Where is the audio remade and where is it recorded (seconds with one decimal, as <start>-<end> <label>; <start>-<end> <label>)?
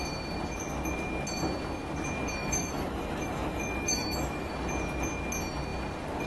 0.0-2.4 recorded; 2.4-4.5 remade; 4.5-6.3 recorded